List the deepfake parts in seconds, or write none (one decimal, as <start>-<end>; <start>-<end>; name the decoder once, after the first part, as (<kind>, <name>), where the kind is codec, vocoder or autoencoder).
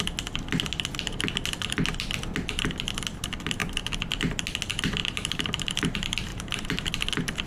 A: 5.0-5.8 (vocoder, BigVGAN v2); 6.3-6.9